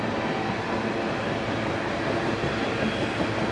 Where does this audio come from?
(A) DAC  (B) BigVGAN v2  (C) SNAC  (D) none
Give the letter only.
D